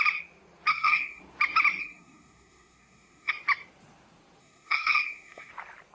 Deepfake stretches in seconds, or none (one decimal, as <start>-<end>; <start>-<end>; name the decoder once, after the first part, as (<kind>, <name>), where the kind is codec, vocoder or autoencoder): 0.7-1.2 (codec, SNAC); 1.8-3.3; 4.4-5.5